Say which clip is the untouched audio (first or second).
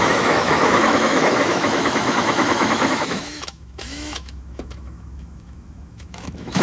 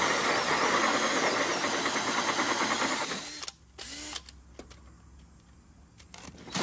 second